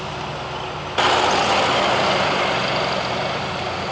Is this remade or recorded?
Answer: recorded